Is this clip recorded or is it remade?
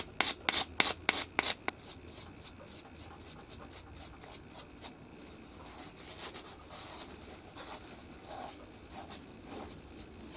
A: recorded